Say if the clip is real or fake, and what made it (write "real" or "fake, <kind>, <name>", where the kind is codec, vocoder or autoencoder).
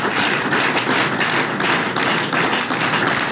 real